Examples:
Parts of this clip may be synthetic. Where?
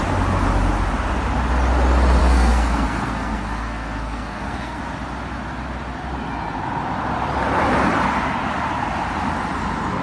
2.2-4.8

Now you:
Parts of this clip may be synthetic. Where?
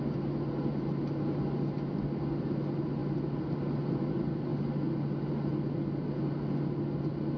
none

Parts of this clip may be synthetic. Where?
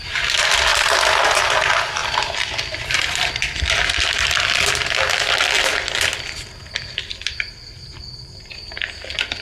0.7-1.4; 2.0-4.6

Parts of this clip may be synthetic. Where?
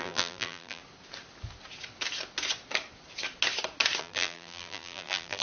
0.0-0.8; 4.0-5.4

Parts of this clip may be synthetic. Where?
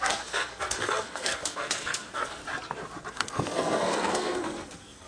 0.0-2.4; 3.1-5.1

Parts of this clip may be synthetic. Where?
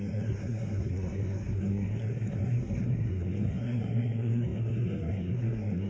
0.0-5.9